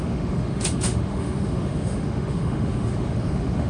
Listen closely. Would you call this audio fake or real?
fake